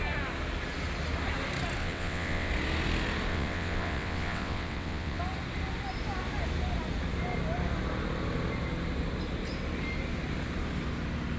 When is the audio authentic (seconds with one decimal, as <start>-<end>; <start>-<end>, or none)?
0.0-1.8; 2.5-3.3; 5.2-11.4